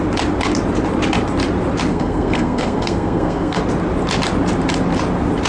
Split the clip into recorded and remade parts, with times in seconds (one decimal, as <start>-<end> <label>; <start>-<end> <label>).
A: 0.0-1.9 recorded; 1.9-3.6 remade; 3.6-5.5 recorded